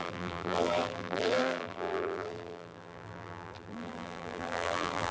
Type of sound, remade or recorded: remade